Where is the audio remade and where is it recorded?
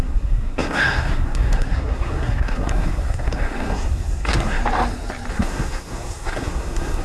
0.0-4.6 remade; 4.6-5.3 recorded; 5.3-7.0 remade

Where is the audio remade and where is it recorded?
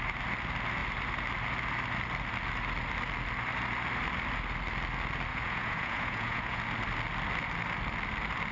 0.0-5.3 recorded; 5.3-6.6 remade; 6.6-8.5 recorded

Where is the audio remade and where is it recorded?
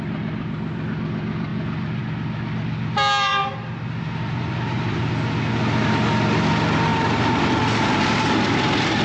0.0-3.3 recorded; 3.3-5.1 remade; 5.1-6.9 recorded; 6.9-7.6 remade; 7.6-9.0 recorded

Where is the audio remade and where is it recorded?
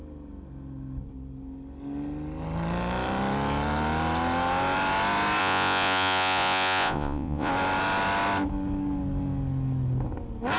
0.0-5.4 recorded; 5.4-7.5 remade; 7.5-10.6 recorded